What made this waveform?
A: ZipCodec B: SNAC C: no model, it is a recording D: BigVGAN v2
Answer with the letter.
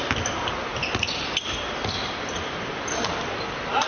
C